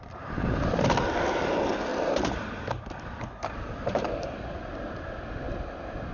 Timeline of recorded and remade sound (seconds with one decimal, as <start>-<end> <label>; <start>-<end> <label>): 0.0-6.1 recorded